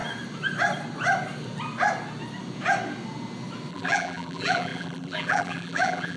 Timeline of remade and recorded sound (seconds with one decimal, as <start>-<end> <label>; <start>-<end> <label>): 0.0-3.7 recorded; 3.7-6.2 remade